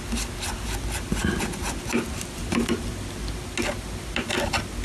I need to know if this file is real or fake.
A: real